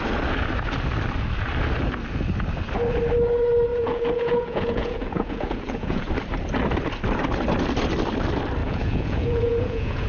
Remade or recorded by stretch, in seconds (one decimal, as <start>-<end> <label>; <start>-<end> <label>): 0.0-3.7 recorded; 3.7-6.1 remade; 6.1-8.6 recorded; 8.6-10.1 remade